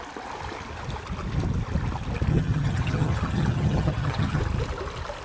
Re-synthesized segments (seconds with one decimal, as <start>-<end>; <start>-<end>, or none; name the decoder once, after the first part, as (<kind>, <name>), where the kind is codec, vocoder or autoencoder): 2.3-4.4 (vocoder, HiFi-GAN)